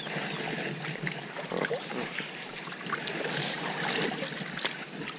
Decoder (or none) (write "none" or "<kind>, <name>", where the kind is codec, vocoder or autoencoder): none